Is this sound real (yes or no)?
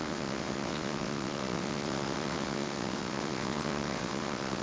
no